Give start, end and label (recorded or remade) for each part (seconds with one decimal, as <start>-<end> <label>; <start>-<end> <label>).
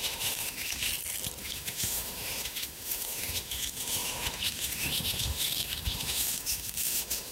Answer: 0.0-0.9 remade; 0.9-1.4 recorded; 1.4-7.3 remade